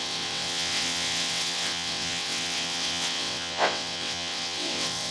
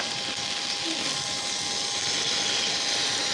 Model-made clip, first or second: first